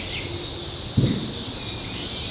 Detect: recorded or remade recorded